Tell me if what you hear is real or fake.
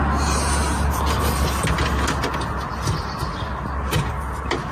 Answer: real